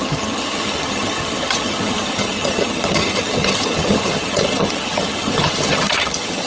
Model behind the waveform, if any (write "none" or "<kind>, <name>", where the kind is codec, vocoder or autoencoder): vocoder, HiFi-GAN